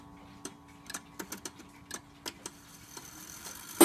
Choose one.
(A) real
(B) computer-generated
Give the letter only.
A